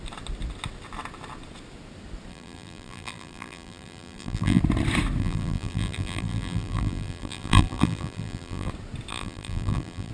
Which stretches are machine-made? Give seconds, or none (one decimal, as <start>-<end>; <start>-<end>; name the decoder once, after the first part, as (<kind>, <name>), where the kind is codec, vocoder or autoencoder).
2.3-4.6 (vocoder, BigVGAN v2); 5.2-8.7; 9.1-10.1